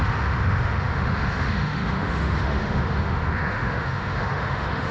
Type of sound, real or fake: fake